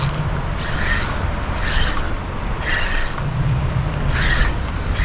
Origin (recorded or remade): recorded